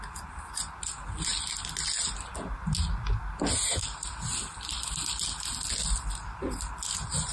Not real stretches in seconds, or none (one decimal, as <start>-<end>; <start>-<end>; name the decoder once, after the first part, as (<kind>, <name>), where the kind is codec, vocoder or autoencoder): none